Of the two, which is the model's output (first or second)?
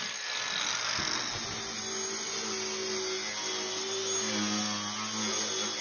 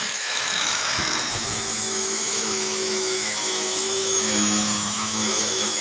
second